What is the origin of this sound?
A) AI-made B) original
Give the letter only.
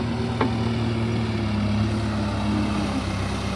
B